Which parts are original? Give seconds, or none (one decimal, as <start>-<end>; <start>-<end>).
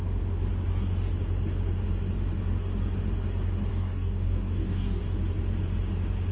0.0-3.7; 5.0-6.3